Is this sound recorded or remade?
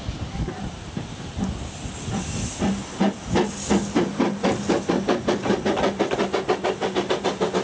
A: recorded